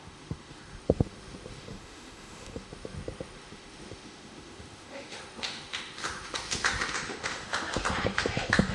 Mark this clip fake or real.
fake